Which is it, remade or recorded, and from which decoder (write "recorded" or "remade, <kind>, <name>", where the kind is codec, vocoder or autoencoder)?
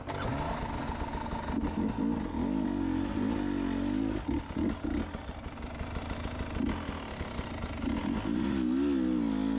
recorded